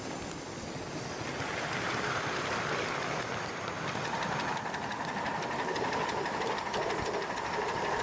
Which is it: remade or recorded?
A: recorded